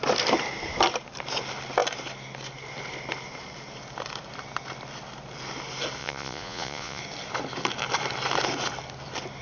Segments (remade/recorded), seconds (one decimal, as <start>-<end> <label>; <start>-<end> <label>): 0.0-6.0 recorded; 6.0-7.0 remade; 7.0-9.4 recorded